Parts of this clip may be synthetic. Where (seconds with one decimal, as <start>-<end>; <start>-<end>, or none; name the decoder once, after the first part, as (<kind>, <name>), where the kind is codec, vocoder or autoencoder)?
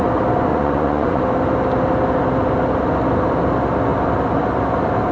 0.5-1.2 (vocoder, Vocos)